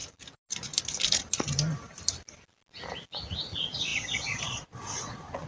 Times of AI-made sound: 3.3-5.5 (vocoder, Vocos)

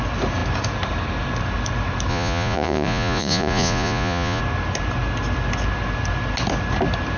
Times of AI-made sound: 2.1-4.4 (vocoder, Vocos)

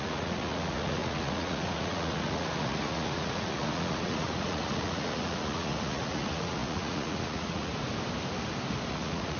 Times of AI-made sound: 0.0-7.7 (vocoder, Vocos); 8.9-9.4

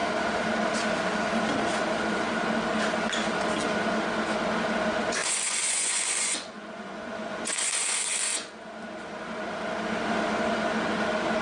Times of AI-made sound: 5.2-8.7 (vocoder, Vocos)

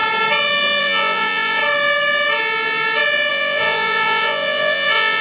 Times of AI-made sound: 0.8-1.6 (vocoder, Vocos); 3.3-5.2

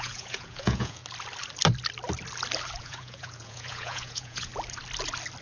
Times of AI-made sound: 0.0-1.0 (vocoder, Vocos); 2.8-4.5

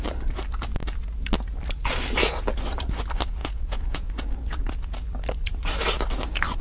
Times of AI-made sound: 3.4-4.1 (vocoder, Vocos)